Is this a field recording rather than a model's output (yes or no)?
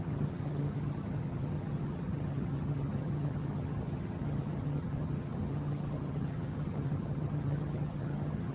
no